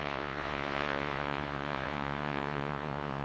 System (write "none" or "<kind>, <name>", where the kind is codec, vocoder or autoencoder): vocoder, Vocos